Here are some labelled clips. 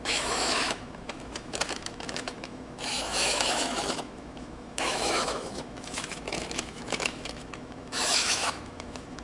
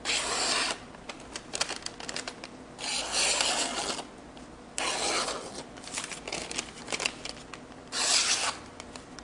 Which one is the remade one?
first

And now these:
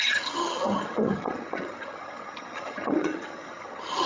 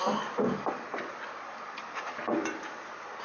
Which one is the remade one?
first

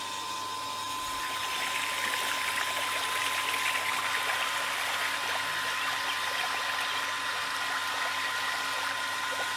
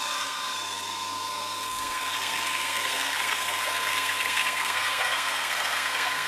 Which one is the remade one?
second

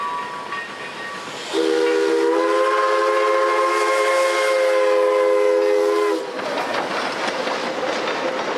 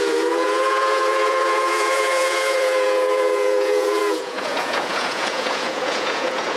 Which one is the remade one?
second